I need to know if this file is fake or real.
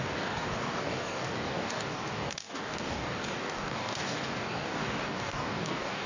fake